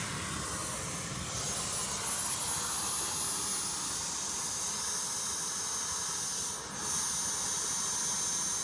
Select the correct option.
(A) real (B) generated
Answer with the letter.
A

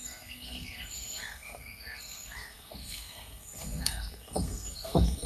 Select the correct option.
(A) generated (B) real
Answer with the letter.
A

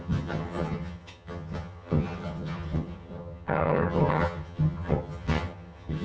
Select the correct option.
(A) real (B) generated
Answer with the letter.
B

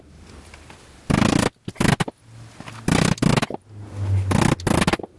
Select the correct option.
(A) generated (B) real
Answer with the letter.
B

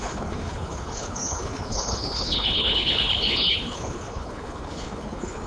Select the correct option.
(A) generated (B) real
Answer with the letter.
A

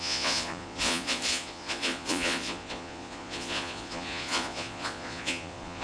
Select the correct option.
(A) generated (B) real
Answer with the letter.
A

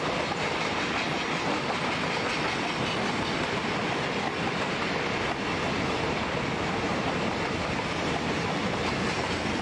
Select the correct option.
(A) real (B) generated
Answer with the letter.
A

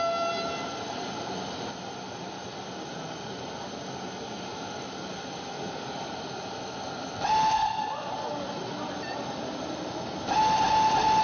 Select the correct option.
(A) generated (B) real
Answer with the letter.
B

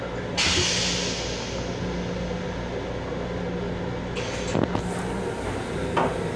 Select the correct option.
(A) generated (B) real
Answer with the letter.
B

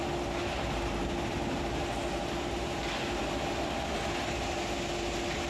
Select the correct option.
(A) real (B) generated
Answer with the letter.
A